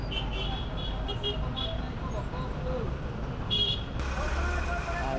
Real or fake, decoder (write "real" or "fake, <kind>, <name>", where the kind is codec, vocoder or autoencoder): real